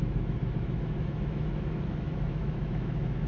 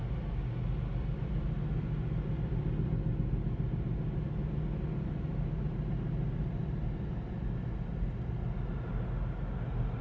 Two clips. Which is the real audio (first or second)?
second